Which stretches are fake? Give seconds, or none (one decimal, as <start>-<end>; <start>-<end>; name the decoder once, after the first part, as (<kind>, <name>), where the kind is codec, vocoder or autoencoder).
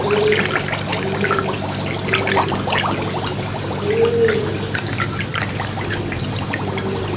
5.3-6.2 (vocoder, BigVGAN v2)